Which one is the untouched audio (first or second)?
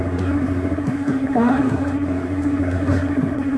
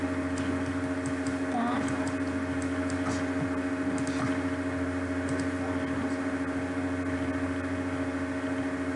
second